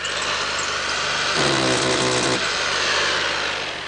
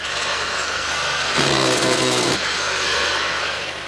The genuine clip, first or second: first